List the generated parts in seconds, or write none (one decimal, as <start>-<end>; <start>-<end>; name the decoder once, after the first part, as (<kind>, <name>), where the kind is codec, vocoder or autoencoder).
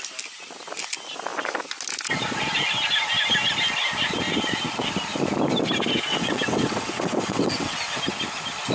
6.1-8.0 (vocoder, WaveNeXt)